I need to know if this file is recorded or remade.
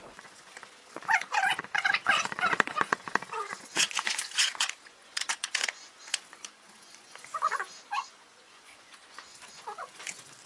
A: remade